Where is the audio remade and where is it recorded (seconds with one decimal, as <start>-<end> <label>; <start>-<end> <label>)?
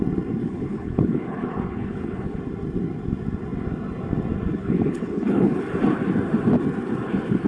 0.0-0.4 recorded; 0.4-2.4 remade; 2.4-4.6 recorded; 4.6-5.6 remade; 5.6-7.5 recorded